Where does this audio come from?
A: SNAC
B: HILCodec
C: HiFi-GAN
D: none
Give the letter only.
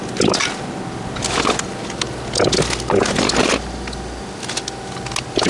D